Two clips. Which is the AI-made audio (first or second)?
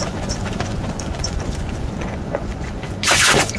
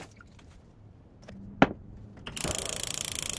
first